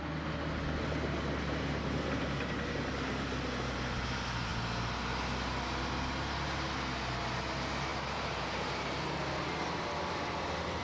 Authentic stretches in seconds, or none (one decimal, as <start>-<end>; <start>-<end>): 0.0-10.8

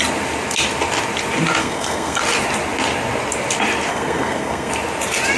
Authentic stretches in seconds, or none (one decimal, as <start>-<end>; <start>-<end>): 0.0-1.6; 2.2-3.9; 4.7-5.4

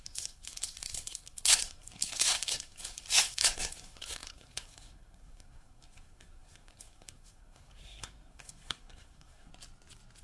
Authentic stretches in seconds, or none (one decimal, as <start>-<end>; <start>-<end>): 9.5-10.2

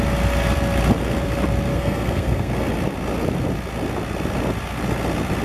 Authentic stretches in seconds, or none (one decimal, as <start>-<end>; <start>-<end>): 0.0-1.7; 2.5-5.4

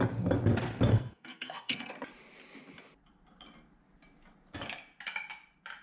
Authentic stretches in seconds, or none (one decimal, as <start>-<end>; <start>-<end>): 0.0-0.9; 1.9-5.8

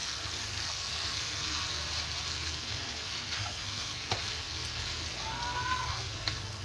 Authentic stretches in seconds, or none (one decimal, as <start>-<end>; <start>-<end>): 1.8-2.3

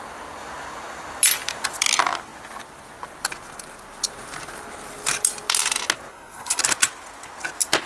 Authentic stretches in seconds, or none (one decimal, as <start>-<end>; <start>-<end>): 0.0-6.1; 6.6-7.9

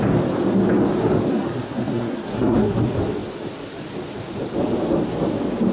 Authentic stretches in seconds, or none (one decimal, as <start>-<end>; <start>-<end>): 0.0-1.3; 2.8-5.7